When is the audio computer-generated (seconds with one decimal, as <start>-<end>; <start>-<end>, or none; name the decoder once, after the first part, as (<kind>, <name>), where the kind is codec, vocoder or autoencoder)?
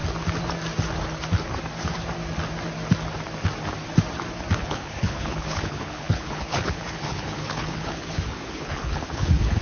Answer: 4.6-9.6 (codec, HILCodec)